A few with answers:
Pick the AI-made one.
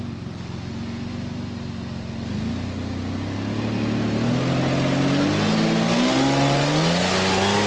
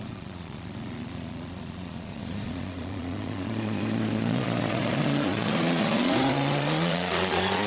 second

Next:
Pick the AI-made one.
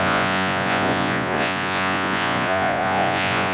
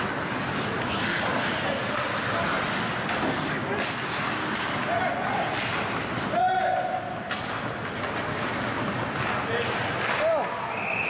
first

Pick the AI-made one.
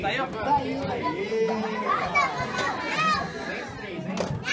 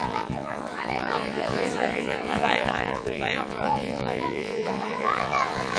second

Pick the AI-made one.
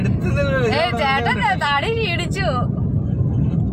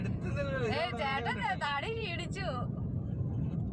second